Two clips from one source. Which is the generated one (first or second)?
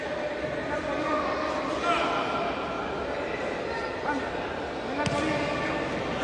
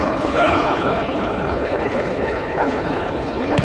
second